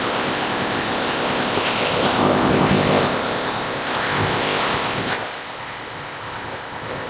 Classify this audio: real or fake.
fake